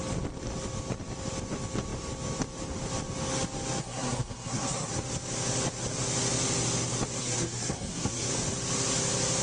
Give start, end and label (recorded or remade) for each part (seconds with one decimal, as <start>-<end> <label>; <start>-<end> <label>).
0.0-3.8 recorded; 3.8-4.9 remade; 4.9-7.2 recorded; 7.2-8.3 remade; 8.3-9.4 recorded